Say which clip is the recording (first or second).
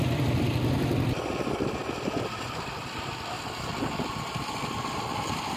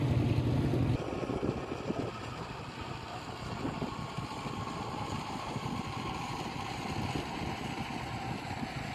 second